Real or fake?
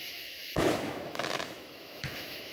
fake